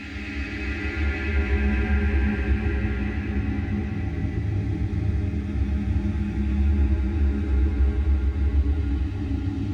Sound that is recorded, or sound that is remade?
recorded